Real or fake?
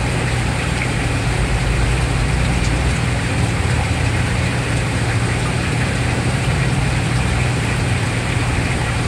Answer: fake